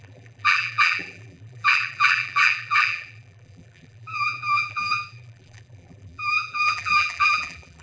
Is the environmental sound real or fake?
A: fake